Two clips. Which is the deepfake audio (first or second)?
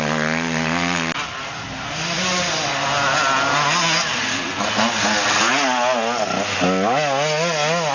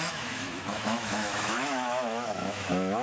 second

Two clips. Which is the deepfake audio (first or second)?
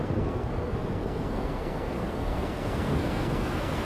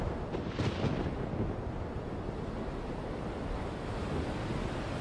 first